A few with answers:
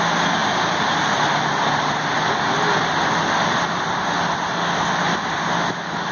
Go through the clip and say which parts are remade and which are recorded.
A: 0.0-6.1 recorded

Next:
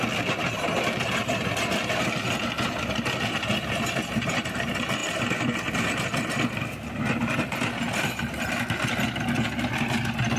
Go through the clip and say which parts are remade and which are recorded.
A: 0.0-10.4 recorded

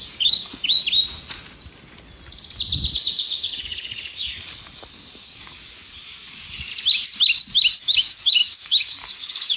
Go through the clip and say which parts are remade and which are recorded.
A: 0.0-0.8 remade; 0.8-2.9 recorded; 2.9-6.7 remade; 6.7-7.8 recorded; 7.8-9.6 remade

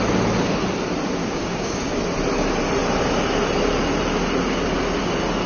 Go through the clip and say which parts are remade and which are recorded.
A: 0.0-1.2 recorded; 1.2-2.0 remade; 2.0-5.5 recorded